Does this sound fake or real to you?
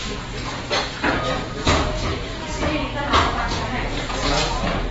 fake